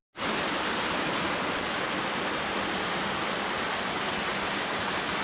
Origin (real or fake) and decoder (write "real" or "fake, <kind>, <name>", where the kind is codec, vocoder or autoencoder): real